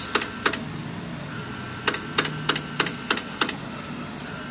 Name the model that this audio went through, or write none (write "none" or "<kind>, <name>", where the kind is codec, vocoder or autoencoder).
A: none